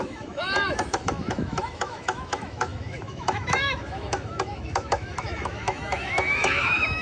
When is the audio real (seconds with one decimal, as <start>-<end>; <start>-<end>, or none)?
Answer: none